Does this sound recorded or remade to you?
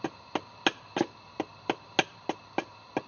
recorded